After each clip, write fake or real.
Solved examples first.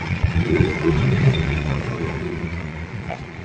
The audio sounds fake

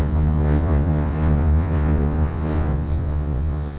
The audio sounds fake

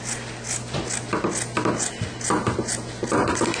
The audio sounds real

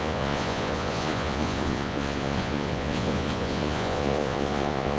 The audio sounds fake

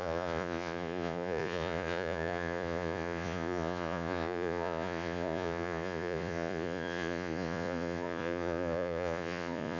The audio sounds fake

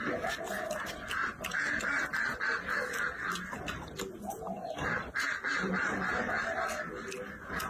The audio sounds real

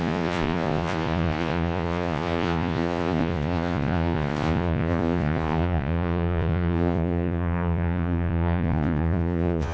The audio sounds fake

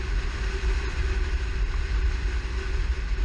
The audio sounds real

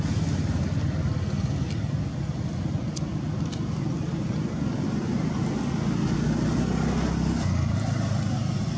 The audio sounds real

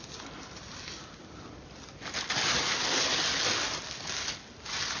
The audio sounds real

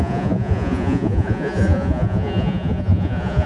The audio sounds fake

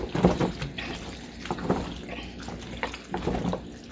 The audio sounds real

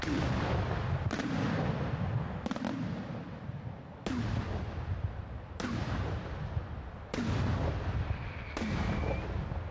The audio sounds real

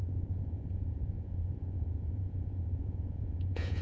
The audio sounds fake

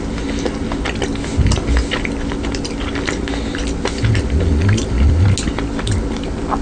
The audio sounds real